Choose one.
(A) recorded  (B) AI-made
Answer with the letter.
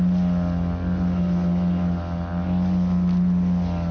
A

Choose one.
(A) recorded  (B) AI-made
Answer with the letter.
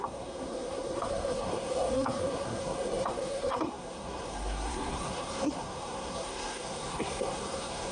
B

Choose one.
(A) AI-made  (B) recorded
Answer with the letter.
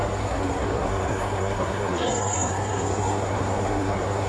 A